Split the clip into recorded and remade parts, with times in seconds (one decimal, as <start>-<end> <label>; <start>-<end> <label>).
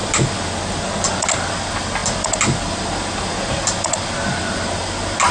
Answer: 0.0-5.3 recorded